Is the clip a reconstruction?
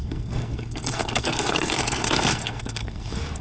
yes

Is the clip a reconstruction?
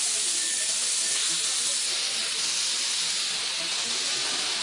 no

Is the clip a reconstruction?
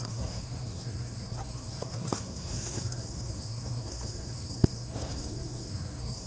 yes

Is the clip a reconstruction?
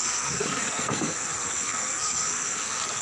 yes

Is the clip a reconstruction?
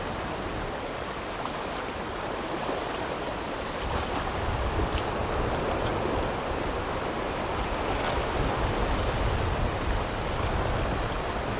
no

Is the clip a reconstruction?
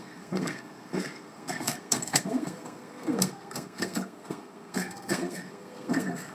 yes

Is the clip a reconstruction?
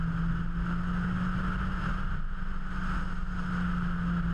no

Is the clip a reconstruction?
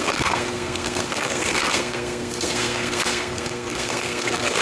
yes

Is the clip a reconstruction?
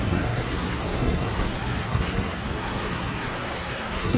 yes